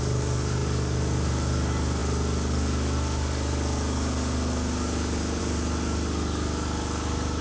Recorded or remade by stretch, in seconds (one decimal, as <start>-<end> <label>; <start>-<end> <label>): 0.0-7.4 remade